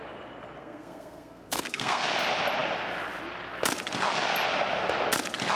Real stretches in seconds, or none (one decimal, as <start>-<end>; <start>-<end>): 0.0-0.6; 2.0-5.6